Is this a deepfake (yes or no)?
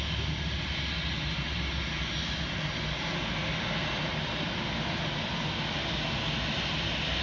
no